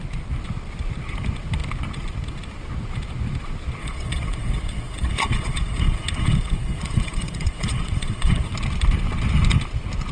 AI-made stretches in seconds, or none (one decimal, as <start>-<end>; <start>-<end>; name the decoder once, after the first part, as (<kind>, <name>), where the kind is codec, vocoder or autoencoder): 3.8-8.5 (vocoder, Vocos)